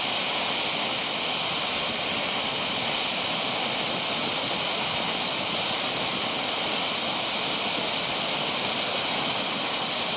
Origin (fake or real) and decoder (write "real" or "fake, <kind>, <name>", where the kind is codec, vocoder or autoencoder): real